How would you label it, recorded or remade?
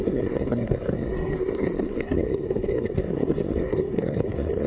remade